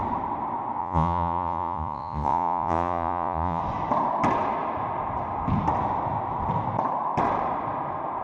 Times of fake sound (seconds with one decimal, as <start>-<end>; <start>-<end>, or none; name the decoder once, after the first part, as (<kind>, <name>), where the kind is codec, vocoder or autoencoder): 0.8-3.6 (vocoder, Vocos)

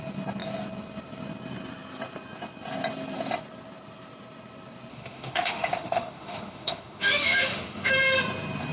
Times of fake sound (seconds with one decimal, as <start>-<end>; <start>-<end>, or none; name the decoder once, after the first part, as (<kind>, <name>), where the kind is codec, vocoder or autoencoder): 4.9-7.9 (autoencoder, DAC-VAE)

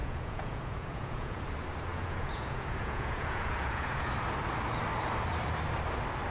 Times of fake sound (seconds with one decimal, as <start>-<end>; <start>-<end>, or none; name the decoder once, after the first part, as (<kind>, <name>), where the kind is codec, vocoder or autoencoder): 0.0-1.4 (vocoder, Vocos); 1.9-4.1

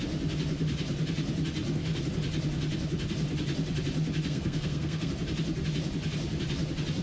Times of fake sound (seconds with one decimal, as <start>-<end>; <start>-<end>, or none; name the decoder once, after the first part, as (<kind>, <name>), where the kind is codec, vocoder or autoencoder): 4.3-5.1 (codec, SNAC)